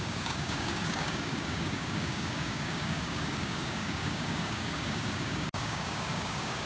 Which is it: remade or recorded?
remade